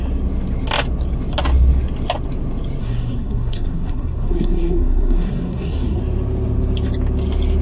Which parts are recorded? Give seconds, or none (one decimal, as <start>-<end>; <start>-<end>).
0.0-2.8; 6.0-7.6